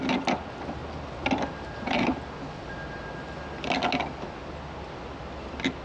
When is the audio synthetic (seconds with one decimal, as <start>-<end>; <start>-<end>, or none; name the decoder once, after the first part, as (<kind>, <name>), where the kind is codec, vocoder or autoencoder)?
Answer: none